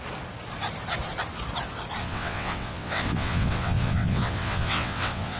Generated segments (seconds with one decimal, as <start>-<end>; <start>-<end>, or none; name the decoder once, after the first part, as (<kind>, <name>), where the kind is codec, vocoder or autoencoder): 2.0-5.4 (vocoder, WaveNeXt)